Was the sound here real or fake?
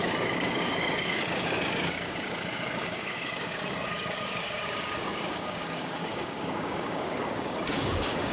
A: fake